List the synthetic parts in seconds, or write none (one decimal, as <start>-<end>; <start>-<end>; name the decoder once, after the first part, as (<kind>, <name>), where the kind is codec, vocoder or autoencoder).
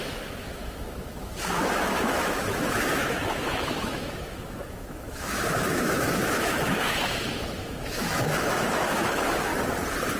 0.0-9.5 (autoencoder, DAC-VAE)